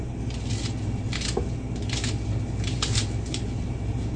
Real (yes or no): yes